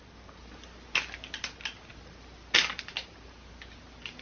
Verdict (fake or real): real